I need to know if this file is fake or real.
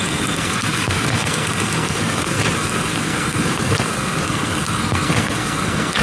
fake